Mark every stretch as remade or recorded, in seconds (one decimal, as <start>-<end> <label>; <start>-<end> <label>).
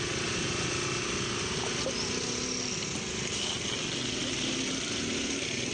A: 0.0-5.7 recorded